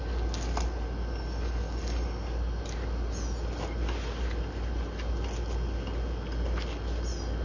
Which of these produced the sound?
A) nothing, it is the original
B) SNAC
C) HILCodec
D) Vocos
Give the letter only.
A